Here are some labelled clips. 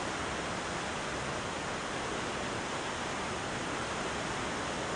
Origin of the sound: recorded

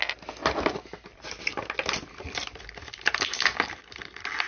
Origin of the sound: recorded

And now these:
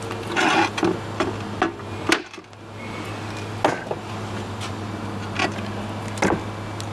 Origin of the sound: recorded